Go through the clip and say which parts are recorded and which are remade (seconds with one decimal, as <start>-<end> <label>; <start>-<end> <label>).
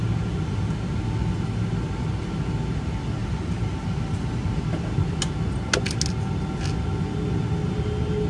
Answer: 0.0-3.2 recorded; 3.2-4.7 remade; 4.7-8.3 recorded